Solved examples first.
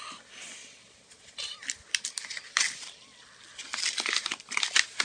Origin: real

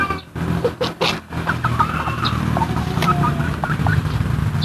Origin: real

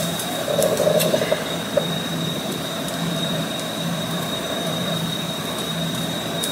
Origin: fake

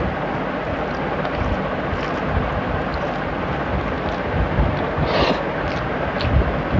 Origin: real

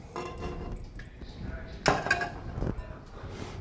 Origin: real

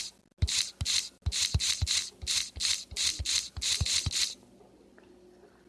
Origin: real